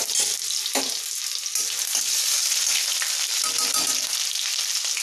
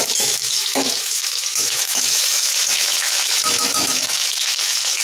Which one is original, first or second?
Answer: first